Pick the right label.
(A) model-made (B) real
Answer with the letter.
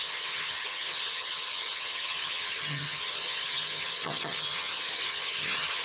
A